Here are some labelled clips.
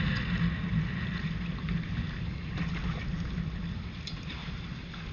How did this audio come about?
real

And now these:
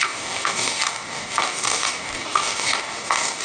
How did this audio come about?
fake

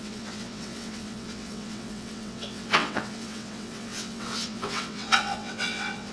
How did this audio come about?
fake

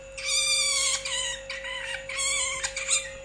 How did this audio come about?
real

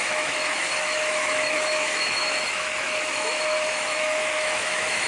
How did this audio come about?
fake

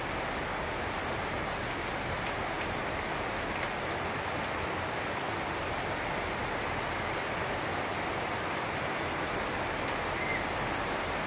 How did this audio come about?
real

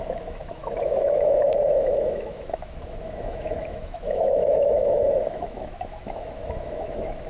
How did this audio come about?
fake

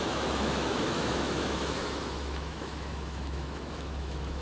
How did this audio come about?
fake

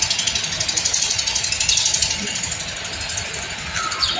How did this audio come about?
real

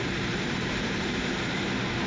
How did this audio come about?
fake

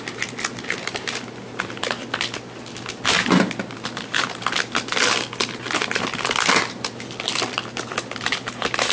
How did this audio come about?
real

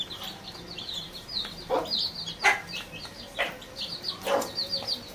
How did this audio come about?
real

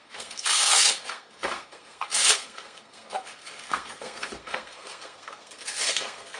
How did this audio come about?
fake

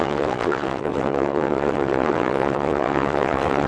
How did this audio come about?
fake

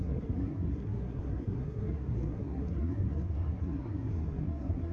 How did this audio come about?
fake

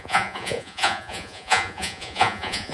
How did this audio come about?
fake